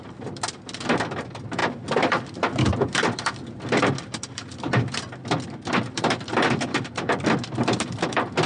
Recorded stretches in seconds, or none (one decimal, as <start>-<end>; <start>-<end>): 0.0-8.5